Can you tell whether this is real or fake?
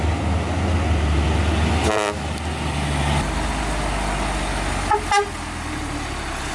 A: real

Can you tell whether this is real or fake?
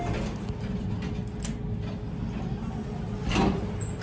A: real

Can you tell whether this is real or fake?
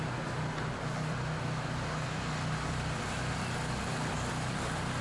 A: real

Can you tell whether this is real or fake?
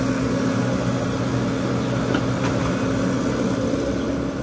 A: real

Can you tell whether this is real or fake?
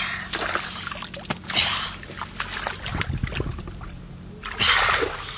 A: real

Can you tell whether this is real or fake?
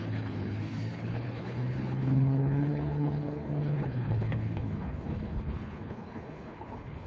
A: fake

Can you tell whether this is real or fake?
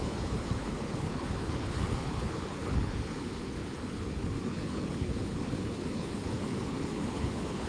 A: fake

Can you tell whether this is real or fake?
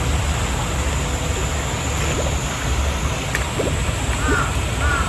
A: real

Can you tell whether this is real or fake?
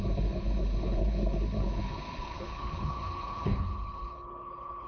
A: fake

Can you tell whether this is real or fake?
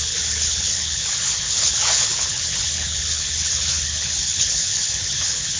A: fake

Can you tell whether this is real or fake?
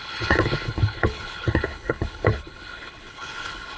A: fake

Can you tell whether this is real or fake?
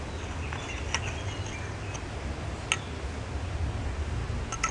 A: real